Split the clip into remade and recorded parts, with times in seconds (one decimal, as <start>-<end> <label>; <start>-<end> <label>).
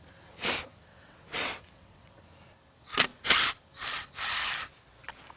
0.0-0.9 recorded; 0.9-2.2 remade; 2.2-5.4 recorded